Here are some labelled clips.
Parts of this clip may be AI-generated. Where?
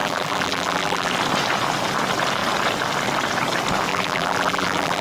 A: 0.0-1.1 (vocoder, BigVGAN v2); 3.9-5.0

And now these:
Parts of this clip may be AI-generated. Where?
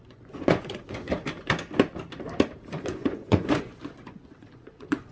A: 0.0-1.1 (vocoder, Vocos); 2.7-5.1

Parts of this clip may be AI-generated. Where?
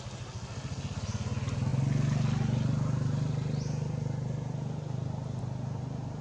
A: none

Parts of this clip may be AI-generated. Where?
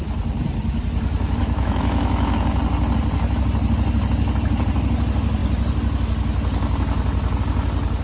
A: 1.4-2.6 (autoencoder, DAC-VAE)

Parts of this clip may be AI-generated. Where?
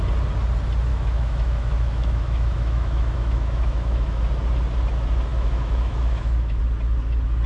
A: 0.9-4.2 (autoencoder, DAC-VAE); 5.3-6.6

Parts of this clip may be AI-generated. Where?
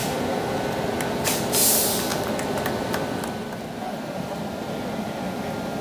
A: none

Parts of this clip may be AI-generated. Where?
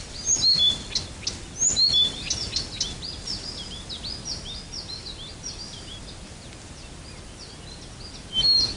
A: none